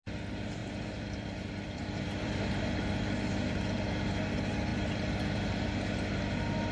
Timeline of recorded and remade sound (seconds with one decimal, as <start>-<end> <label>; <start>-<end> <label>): 0.0-0.6 recorded; 0.6-2.5 remade; 2.5-4.7 recorded; 4.7-5.2 remade; 5.2-6.7 recorded